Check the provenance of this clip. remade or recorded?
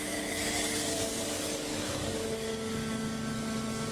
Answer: remade